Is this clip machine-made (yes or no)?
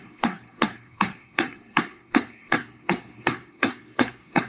yes